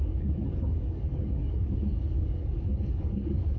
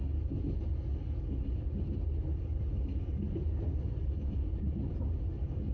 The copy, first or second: first